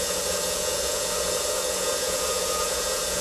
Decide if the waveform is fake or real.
fake